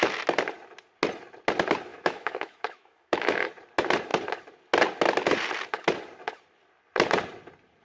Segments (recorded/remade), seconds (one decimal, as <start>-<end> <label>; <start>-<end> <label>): 0.0-1.9 recorded; 1.9-3.5 remade; 3.5-7.8 recorded